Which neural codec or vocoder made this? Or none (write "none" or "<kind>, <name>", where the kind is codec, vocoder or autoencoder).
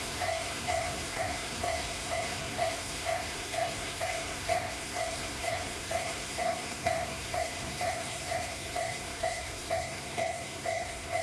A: codec, SNAC